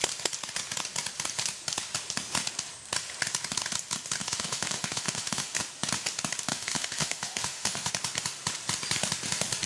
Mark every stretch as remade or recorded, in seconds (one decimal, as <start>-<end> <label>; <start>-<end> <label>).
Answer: 0.0-4.2 recorded; 4.2-5.6 remade; 5.6-6.5 recorded; 6.5-7.9 remade; 7.9-9.7 recorded